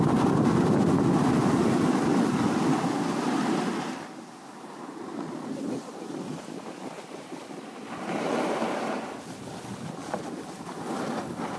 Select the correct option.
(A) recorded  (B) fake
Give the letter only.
A